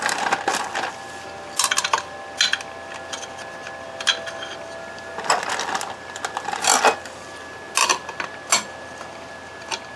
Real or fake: real